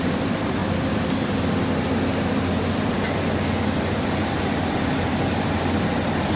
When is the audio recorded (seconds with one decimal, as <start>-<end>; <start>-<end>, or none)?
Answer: 0.6-4.4